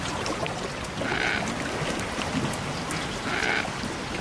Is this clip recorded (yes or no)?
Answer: yes